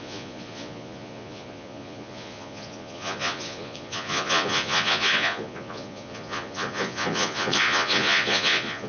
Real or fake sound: fake